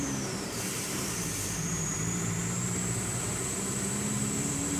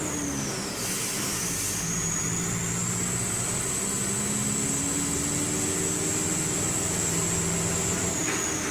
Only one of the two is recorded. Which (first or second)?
second